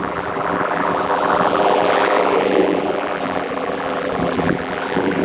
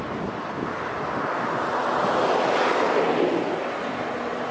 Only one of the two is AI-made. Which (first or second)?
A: first